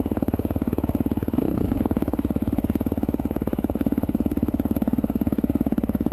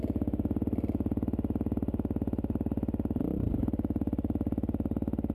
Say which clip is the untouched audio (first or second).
second